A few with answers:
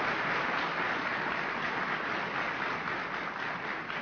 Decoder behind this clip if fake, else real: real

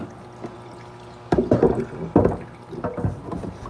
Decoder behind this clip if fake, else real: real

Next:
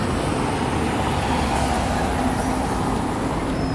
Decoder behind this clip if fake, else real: real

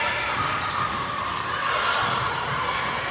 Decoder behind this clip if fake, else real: real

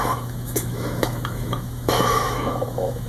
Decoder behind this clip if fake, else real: fake, autoencoder, DAC-VAE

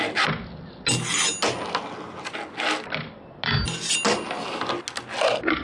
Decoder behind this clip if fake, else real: real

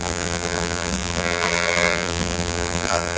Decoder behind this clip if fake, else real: fake, vocoder, BigVGAN v2